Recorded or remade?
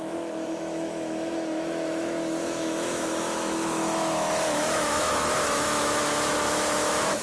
remade